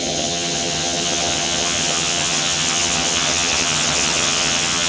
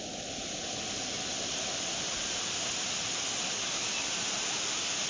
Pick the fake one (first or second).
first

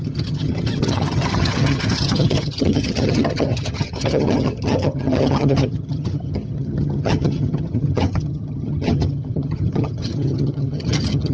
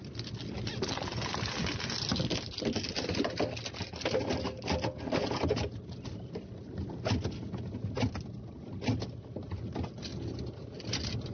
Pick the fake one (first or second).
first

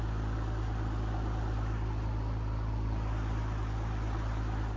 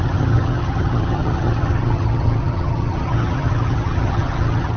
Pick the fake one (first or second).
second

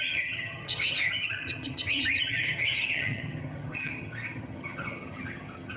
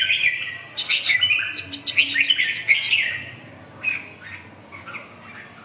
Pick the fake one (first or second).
first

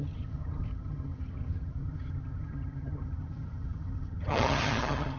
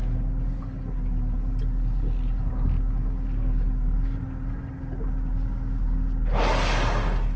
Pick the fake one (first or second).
first